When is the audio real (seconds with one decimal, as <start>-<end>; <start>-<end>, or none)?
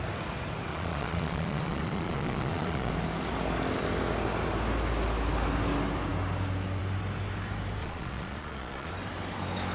0.0-0.7; 2.9-7.8; 8.9-9.7